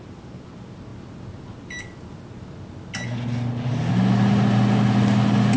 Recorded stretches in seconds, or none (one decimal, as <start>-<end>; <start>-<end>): 0.0-5.6